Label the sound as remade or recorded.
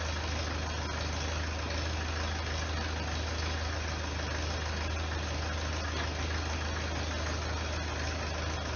recorded